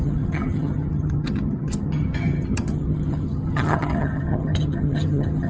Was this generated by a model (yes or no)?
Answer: yes